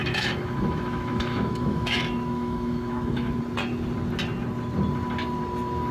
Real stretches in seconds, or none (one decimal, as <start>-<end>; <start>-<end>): 3.4-5.9